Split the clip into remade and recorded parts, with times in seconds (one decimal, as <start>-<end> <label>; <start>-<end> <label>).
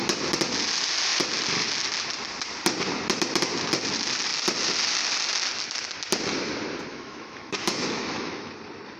0.0-6.9 recorded; 6.9-8.5 remade; 8.5-9.0 recorded